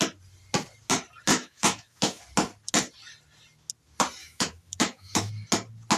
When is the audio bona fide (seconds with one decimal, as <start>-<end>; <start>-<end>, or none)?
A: 0.0-1.3; 2.2-4.2; 5.3-6.0